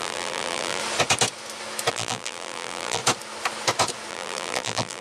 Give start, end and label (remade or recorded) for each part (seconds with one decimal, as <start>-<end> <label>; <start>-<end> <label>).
0.0-0.8 remade; 0.8-1.9 recorded; 1.9-3.0 remade; 3.0-4.1 recorded; 4.1-5.0 remade